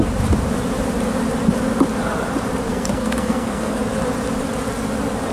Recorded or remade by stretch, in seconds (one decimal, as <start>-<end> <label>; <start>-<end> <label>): 0.0-2.7 recorded; 2.7-3.8 remade; 3.8-5.3 recorded